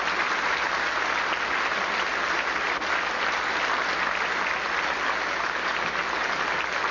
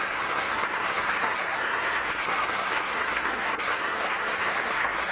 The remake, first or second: second